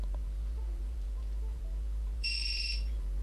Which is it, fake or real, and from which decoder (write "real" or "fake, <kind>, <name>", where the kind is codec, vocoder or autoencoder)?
fake, vocoder, BigVGAN v2